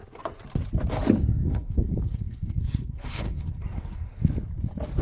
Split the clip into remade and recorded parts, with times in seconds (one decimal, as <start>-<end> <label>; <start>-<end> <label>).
0.0-1.3 recorded; 1.3-4.3 remade; 4.3-5.0 recorded